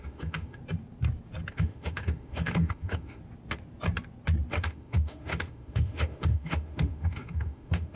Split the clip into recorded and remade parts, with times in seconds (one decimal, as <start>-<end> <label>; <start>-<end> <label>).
0.0-0.6 remade; 0.6-1.5 recorded; 1.5-3.2 remade; 3.2-4.5 recorded; 4.5-8.0 remade

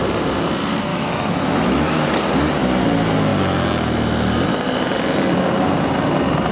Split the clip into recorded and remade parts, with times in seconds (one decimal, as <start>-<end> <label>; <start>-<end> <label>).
0.0-0.9 recorded; 0.9-2.1 remade; 2.1-6.5 recorded

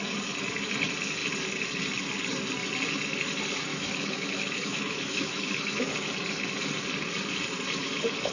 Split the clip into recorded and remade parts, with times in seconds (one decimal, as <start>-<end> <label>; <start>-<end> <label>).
0.0-3.7 recorded; 3.7-5.9 remade; 5.9-8.3 recorded

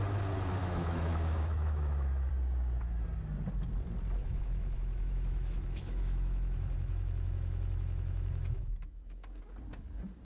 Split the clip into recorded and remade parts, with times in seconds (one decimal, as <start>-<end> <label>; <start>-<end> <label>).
0.0-0.6 recorded; 0.6-2.3 remade; 2.3-4.2 recorded; 4.2-9.4 remade; 9.4-10.2 recorded

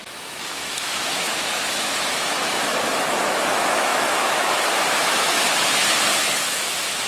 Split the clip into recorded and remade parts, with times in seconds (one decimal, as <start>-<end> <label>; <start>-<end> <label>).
0.0-5.8 remade; 5.8-6.4 recorded; 6.4-7.1 remade